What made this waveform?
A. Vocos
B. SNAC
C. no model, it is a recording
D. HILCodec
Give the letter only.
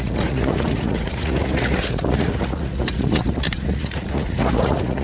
A